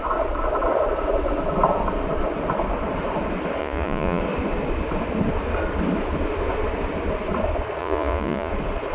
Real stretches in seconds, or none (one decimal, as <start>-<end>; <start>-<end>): 0.0-3.6; 4.2-7.8; 8.5-8.9